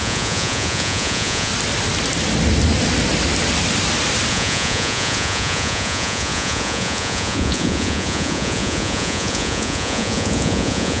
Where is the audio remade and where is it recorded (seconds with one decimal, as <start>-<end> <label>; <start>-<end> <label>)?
0.0-1.5 remade; 1.5-4.3 recorded; 4.3-11.0 remade